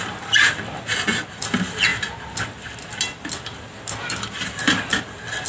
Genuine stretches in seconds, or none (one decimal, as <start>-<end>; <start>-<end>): 0.0-5.5